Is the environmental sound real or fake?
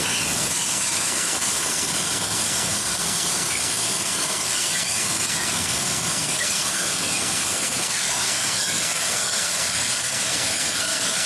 fake